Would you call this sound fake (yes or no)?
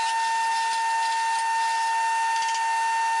no